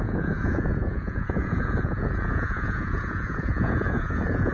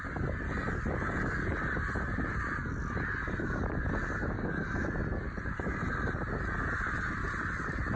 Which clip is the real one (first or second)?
second